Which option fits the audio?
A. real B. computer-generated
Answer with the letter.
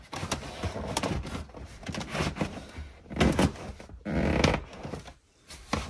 A